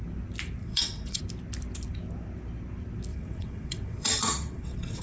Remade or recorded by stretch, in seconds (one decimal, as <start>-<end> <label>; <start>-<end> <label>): 0.0-0.6 recorded; 0.6-1.2 remade; 1.2-3.1 recorded; 3.1-5.0 remade